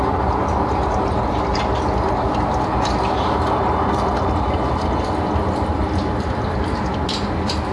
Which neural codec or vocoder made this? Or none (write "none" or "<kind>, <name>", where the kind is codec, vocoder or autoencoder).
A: none